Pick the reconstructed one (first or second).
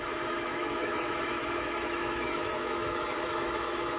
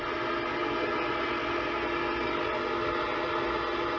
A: first